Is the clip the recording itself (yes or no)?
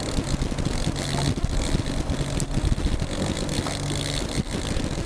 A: yes